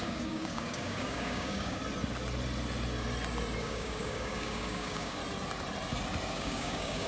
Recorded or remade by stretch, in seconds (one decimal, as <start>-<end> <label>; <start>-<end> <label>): 0.0-1.8 remade; 1.8-3.6 recorded; 3.6-5.2 remade; 5.2-6.3 recorded; 6.3-7.1 remade